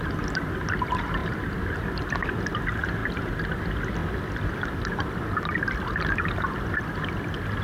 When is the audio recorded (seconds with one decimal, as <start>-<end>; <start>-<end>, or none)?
0.0-1.2; 2.2-3.0; 3.6-7.6